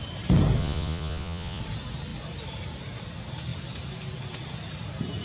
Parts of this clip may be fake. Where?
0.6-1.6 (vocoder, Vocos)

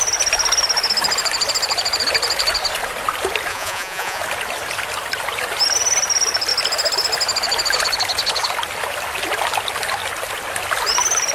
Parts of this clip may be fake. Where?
3.5-4.2 (vocoder, Vocos)

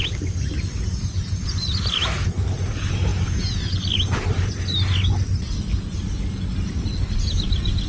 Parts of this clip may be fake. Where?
none

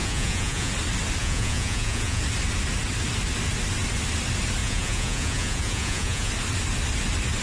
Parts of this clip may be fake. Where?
0.0-0.7 (vocoder, Vocos); 1.2-2.2; 4.6-6.3